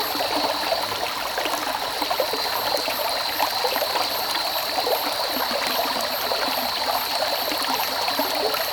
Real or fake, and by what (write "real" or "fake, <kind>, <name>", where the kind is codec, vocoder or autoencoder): real